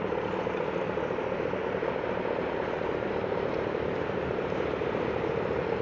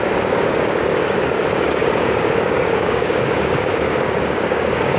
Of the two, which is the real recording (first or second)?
first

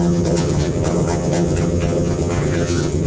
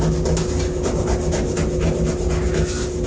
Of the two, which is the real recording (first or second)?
second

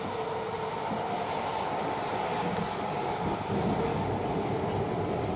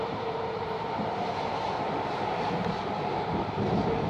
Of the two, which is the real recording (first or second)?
first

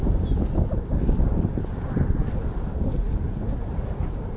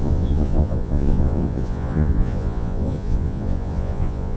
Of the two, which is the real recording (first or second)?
first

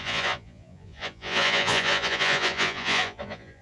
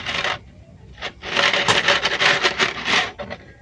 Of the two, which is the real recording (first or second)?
second